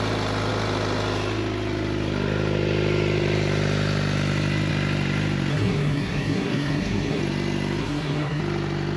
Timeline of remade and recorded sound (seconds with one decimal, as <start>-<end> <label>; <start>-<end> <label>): 0.0-5.5 recorded; 5.5-7.2 remade; 7.2-7.8 recorded; 7.8-8.4 remade; 8.4-9.0 recorded